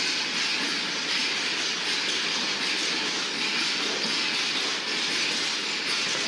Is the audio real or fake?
real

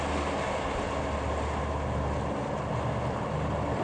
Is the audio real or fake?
real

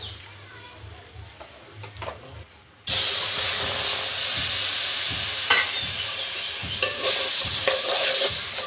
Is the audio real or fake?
real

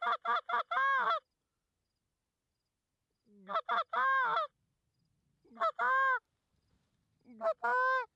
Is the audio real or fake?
real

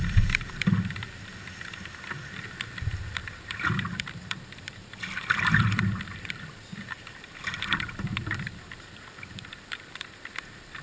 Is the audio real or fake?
fake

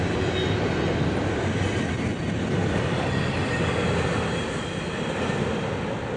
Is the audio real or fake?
real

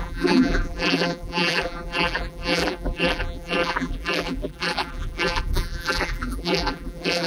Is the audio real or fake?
fake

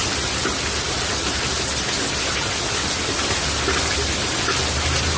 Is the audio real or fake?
real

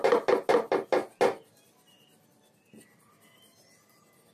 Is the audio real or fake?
real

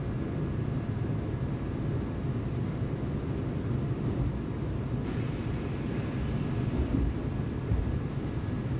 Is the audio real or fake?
real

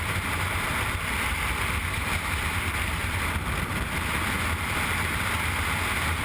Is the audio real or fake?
real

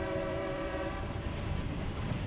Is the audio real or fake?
fake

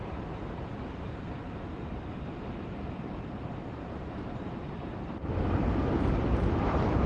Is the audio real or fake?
fake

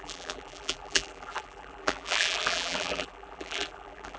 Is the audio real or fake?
fake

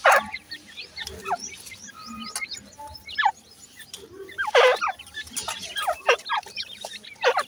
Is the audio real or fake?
real